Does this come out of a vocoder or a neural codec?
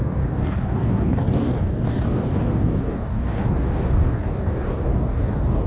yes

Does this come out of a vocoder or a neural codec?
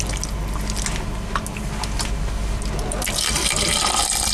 no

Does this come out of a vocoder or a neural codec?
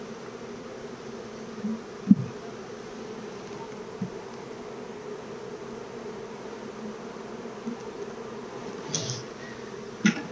no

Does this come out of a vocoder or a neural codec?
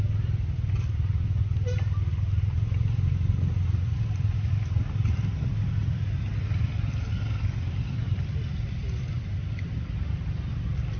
no